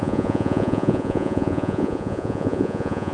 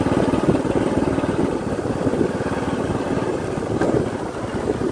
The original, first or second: second